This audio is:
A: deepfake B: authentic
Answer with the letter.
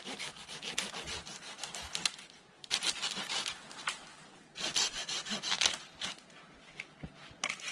B